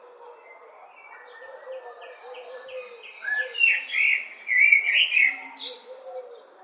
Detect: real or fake real